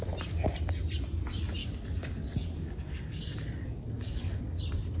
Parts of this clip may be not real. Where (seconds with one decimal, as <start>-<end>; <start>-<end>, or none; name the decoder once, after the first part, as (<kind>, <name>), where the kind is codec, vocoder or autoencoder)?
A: 1.6-4.6 (codec, DAC)